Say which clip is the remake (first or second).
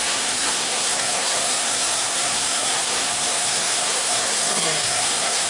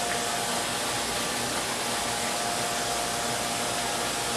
first